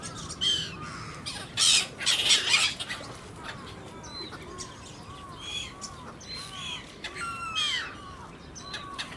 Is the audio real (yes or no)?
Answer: yes